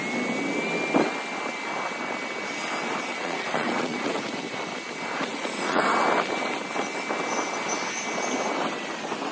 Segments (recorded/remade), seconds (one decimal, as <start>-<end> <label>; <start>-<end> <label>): 0.0-3.1 recorded; 3.1-4.3 remade; 4.3-5.3 recorded; 5.3-5.8 remade; 5.8-9.3 recorded

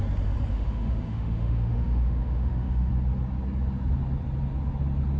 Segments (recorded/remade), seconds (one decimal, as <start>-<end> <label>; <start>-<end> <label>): 0.0-0.5 recorded; 0.5-2.9 remade; 2.9-5.2 recorded

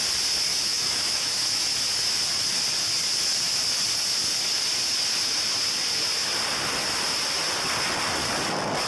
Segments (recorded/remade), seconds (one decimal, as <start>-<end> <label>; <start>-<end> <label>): 0.0-0.5 recorded; 0.5-1.7 remade; 1.7-8.9 recorded

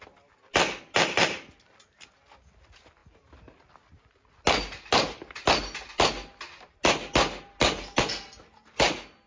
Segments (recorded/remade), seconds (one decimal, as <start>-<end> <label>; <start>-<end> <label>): 0.0-9.3 recorded

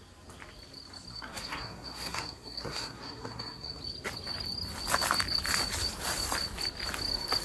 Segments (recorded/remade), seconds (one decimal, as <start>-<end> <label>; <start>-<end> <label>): 0.0-1.1 recorded; 1.1-3.8 remade; 3.8-7.4 recorded

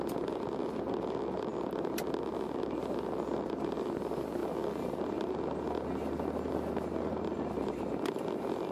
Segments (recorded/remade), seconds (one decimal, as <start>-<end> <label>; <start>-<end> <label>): 0.0-8.7 recorded